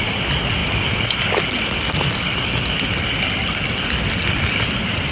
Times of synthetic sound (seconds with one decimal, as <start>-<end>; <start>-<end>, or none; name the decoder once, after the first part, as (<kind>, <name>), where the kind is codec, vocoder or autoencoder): none